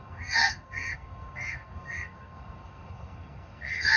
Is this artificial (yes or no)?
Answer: yes